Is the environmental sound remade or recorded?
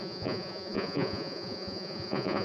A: remade